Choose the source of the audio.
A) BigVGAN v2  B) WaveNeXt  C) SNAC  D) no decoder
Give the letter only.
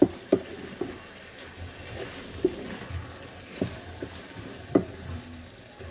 D